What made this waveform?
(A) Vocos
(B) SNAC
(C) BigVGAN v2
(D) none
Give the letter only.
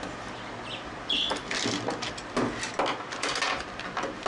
D